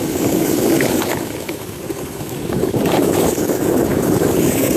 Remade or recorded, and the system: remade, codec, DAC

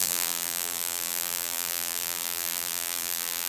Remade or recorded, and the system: remade, vocoder, BigVGAN v2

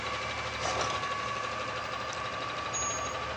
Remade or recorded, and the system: recorded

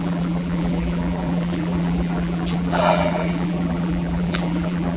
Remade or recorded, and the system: remade, vocoder, BigVGAN v2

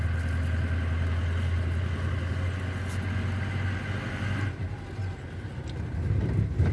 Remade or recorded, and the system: recorded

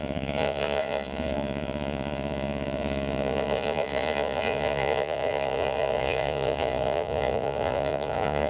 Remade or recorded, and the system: remade, vocoder, Vocos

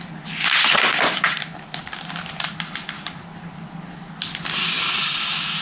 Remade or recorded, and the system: recorded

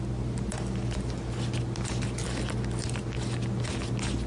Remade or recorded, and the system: recorded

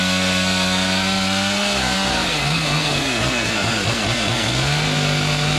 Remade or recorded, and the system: remade, codec, SNAC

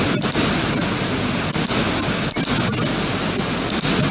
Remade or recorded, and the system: recorded